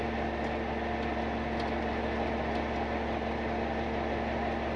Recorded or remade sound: recorded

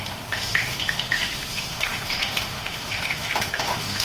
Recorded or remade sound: remade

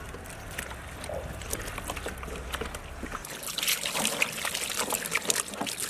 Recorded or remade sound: recorded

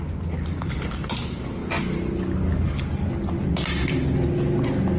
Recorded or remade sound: recorded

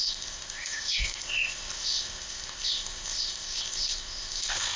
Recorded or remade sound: remade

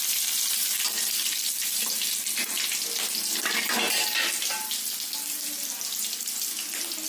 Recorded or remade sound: recorded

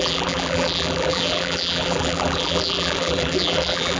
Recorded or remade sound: remade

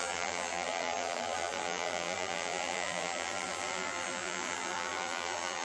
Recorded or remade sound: remade